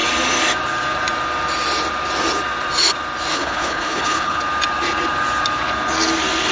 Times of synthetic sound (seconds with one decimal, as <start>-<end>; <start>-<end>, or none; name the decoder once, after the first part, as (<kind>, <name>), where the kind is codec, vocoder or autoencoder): 3.3-4.4 (codec, HILCodec)